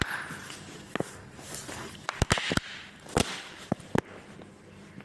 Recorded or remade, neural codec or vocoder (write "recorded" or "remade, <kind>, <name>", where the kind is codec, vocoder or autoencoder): recorded